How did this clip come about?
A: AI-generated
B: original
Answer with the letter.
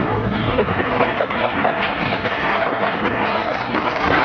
A